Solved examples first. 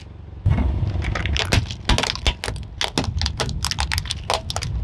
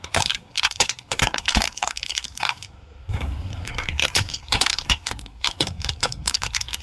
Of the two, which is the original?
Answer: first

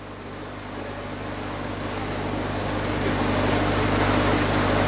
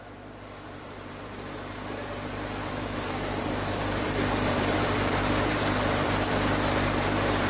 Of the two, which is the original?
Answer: first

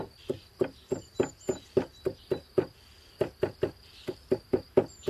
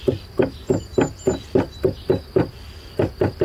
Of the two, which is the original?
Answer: second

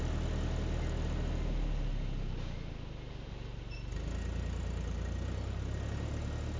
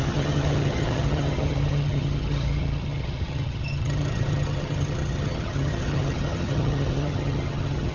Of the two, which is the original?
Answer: first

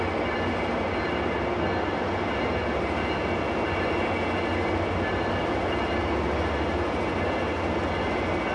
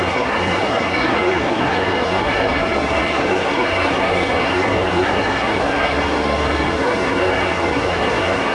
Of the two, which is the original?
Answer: first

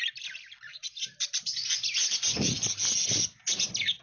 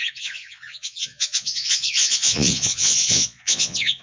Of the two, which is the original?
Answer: first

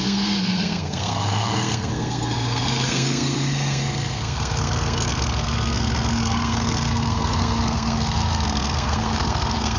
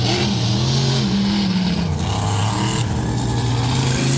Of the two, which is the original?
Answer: second